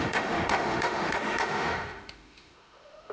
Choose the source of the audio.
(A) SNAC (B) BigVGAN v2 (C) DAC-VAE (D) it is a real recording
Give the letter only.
C